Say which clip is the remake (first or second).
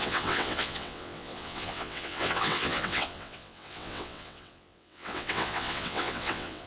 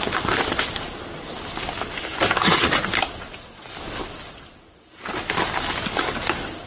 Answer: first